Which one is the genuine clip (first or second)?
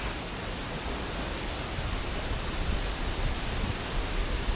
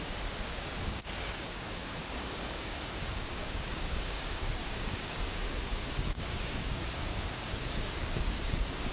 first